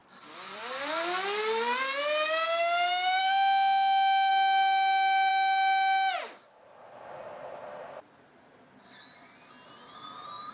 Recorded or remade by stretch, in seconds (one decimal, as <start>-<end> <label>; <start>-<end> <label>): 0.0-3.2 recorded; 3.2-4.3 remade; 4.3-10.5 recorded